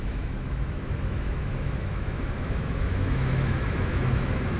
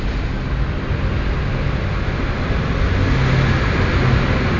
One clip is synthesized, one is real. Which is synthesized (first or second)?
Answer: first